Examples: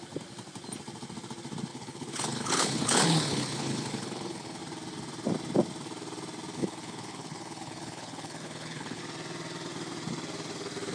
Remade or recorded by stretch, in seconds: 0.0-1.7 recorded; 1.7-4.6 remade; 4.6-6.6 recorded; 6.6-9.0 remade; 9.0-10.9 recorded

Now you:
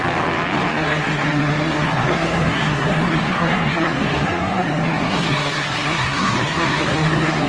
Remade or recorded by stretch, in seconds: 0.0-0.7 recorded; 0.7-7.5 remade

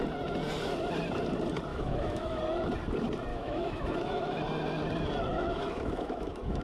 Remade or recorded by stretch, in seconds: 0.0-1.7 recorded; 1.7-2.4 remade; 2.4-3.3 recorded; 3.3-4.4 remade; 4.4-5.3 recorded; 5.3-6.6 remade

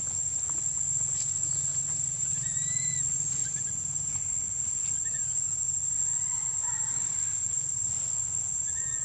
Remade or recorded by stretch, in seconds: 0.0-1.7 recorded; 1.7-2.9 remade; 2.9-3.4 recorded; 3.4-4.1 remade; 4.1-9.0 recorded

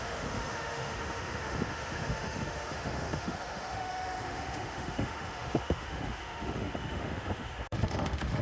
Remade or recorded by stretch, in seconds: 0.0-8.4 remade

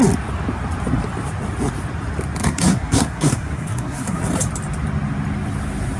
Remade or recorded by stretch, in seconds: 0.0-2.4 recorded; 2.4-4.2 remade; 4.2-6.0 recorded